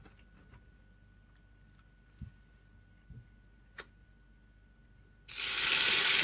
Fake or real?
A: real